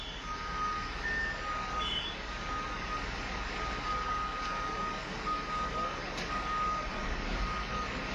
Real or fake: fake